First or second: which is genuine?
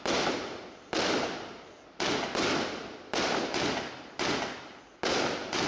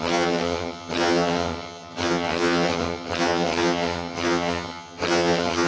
first